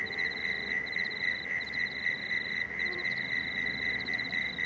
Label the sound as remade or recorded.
recorded